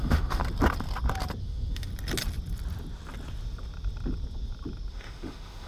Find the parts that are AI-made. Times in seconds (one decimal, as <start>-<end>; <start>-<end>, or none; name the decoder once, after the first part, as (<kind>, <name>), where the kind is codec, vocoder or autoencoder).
0.0-0.4 (autoencoder, DAC-VAE); 1.4-1.9; 4.9-5.7